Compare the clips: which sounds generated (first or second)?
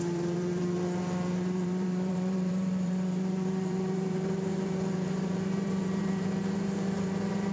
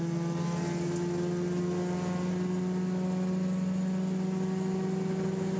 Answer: first